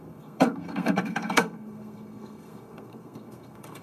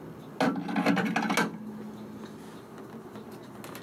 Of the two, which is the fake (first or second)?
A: first